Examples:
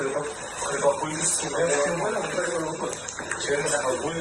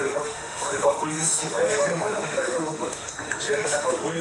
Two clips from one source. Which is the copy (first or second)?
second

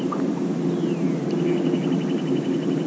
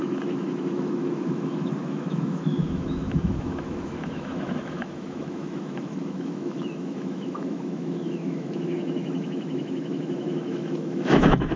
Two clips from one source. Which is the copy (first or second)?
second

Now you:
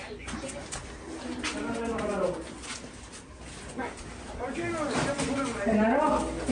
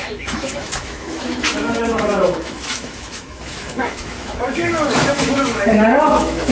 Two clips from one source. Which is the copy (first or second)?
second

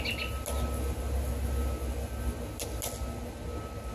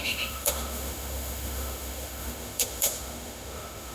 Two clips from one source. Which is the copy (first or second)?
second